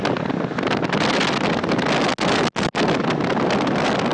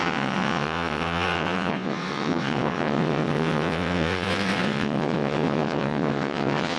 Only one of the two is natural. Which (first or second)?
first